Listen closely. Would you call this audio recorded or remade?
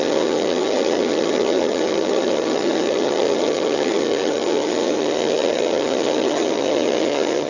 remade